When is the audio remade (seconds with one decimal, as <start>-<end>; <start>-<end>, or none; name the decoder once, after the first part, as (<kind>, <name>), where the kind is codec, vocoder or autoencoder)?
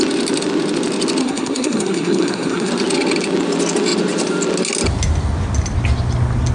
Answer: 1.2-2.7 (codec, SNAC)